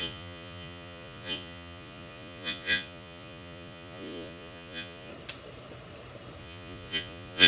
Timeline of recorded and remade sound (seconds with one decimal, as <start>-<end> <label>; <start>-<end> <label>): 0.0-5.1 remade; 5.1-6.4 recorded; 6.4-7.5 remade

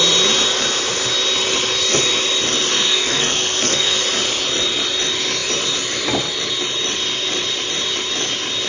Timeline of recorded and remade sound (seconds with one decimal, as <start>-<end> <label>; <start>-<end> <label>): 0.0-2.7 recorded; 2.7-4.0 remade; 4.0-8.7 recorded

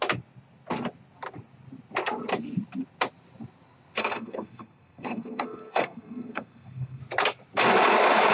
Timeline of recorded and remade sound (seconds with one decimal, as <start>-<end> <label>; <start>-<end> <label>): 0.0-4.0 recorded; 4.0-7.0 remade; 7.0-8.3 recorded